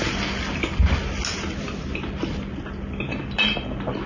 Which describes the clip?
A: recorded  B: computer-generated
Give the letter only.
A